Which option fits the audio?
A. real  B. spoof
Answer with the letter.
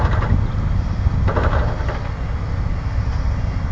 A